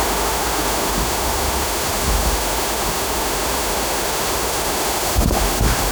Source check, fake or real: fake